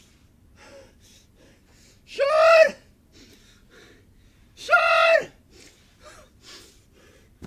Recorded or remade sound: recorded